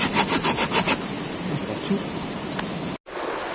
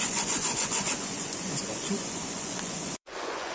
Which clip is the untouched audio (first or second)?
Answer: first